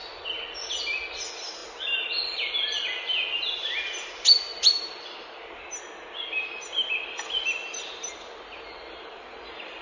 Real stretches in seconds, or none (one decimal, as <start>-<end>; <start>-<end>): 0.0-9.8

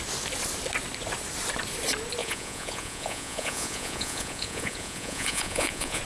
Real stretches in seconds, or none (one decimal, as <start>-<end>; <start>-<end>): 0.0-2.2

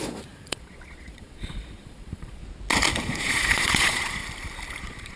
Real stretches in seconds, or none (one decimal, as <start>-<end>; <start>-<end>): 2.4-3.0; 4.2-4.8

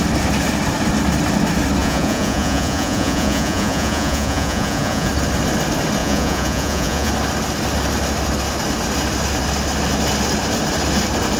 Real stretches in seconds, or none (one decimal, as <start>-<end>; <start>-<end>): 0.0-1.8; 5.1-6.0; 7.1-11.4

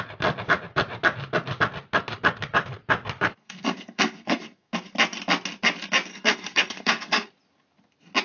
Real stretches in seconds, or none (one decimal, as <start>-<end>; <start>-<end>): 0.0-3.4; 4.7-6.1; 7.3-8.2

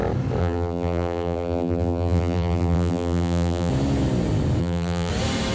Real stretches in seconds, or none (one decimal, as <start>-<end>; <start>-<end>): 0.0-0.4; 3.7-4.6; 5.1-5.5

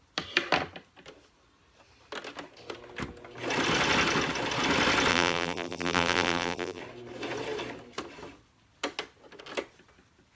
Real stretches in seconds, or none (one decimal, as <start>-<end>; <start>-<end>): 0.0-5.1; 6.8-10.4